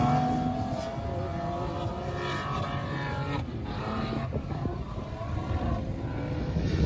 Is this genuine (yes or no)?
yes